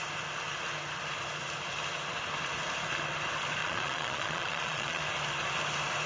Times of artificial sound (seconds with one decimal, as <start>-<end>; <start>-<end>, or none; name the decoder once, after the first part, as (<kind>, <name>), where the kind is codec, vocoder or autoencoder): 3.6-5.0 (vocoder, Vocos)